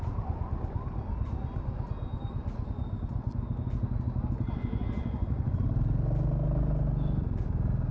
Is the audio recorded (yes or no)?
yes